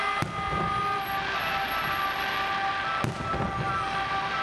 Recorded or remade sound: recorded